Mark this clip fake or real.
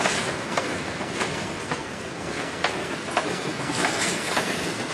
fake